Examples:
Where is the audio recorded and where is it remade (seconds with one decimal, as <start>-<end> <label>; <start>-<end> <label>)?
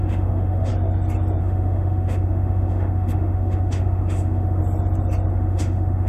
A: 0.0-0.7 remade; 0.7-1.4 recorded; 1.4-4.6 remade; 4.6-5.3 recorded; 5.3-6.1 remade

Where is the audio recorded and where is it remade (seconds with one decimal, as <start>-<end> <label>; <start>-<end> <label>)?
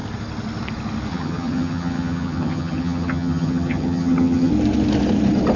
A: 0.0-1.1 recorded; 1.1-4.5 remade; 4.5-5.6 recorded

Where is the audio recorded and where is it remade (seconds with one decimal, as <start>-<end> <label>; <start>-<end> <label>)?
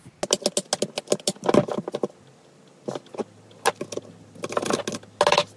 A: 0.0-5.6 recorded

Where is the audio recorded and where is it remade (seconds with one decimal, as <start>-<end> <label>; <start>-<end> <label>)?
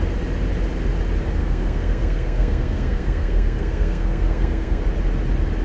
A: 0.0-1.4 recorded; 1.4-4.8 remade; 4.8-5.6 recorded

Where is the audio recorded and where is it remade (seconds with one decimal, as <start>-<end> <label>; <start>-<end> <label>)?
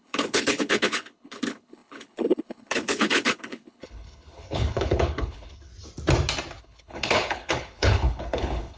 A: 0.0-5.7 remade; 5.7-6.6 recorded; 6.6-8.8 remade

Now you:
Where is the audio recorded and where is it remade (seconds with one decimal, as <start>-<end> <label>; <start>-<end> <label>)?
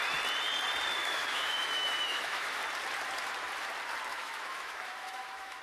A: 0.0-1.0 recorded; 1.0-2.6 remade; 2.6-4.1 recorded; 4.1-5.6 remade